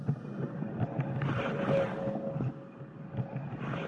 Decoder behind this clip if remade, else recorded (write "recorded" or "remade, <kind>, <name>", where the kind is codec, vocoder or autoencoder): recorded